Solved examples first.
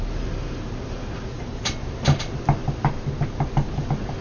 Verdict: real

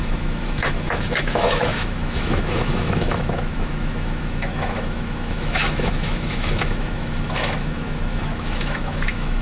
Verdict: fake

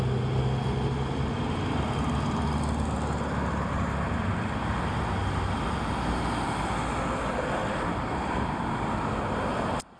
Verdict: real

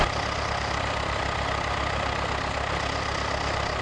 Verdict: real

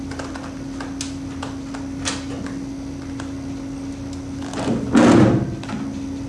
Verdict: real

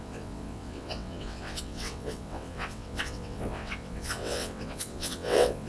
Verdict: fake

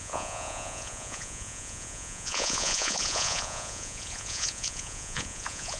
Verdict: fake